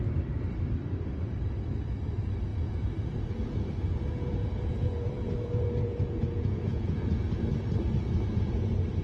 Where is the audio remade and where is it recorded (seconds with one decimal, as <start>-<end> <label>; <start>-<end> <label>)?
0.0-2.5 recorded; 2.5-7.4 remade; 7.4-9.0 recorded